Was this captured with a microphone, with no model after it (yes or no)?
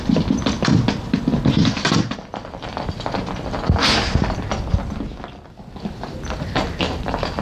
yes